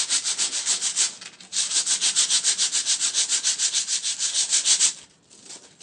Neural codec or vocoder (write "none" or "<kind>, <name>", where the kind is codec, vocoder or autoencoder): none